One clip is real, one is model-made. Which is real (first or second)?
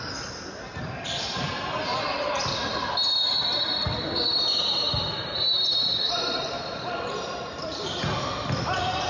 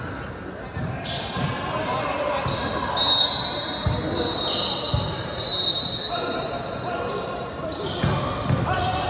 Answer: second